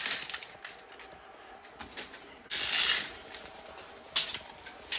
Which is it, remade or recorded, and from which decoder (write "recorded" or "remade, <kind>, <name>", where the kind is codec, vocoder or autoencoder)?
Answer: recorded